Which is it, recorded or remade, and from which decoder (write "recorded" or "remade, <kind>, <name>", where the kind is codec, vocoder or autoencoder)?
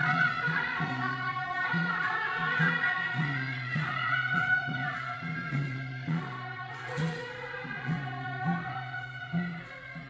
remade, vocoder, Vocos